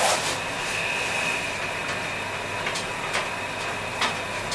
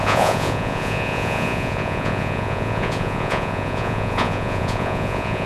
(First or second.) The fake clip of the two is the second